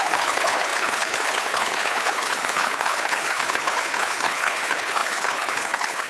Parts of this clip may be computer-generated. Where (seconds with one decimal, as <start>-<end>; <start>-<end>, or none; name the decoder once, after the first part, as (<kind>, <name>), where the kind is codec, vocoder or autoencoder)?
0.0-6.1 (codec, HILCodec)